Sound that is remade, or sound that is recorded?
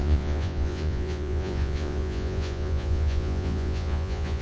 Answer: remade